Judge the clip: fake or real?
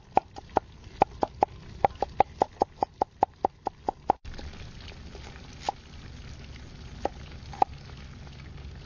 real